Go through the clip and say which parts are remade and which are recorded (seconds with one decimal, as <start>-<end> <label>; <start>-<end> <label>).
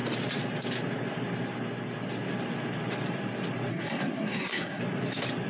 0.0-3.7 recorded; 3.7-4.8 remade; 4.8-5.5 recorded